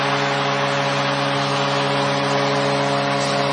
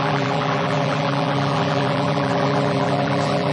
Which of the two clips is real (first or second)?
first